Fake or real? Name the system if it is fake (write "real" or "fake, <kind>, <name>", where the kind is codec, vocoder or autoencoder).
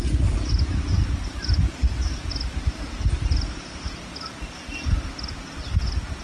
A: real